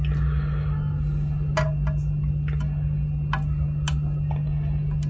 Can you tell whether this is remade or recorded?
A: recorded